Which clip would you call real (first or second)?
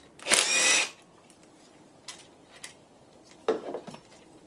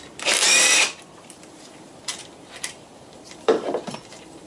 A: first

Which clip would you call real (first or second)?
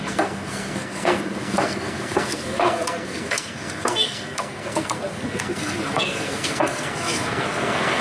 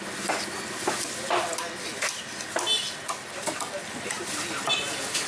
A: second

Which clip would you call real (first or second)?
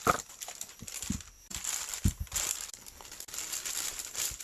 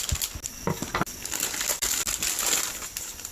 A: second